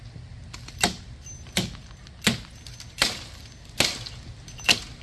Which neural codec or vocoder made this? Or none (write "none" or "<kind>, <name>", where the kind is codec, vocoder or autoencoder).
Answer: none